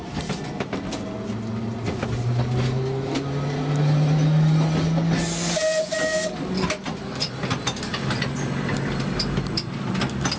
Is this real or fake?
real